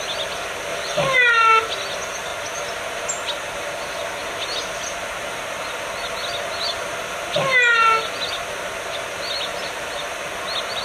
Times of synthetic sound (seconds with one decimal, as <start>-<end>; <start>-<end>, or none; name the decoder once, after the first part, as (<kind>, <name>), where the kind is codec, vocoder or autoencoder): 0.7-1.3 (vocoder, BigVGAN v2); 9.5-10.1